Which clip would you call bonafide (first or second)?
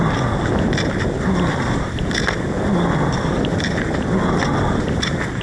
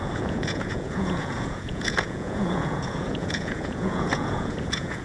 first